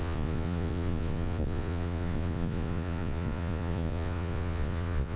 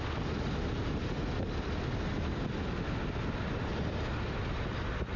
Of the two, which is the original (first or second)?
second